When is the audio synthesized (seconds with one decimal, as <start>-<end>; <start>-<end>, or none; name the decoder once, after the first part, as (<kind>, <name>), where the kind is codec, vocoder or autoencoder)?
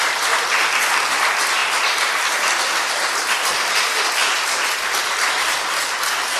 none